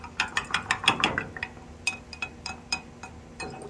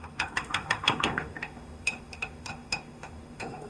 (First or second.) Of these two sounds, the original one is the first